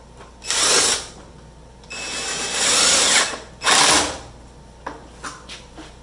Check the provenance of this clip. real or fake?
real